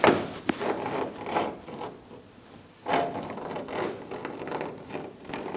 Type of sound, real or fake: real